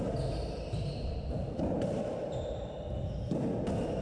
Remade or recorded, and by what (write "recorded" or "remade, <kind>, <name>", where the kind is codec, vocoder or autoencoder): recorded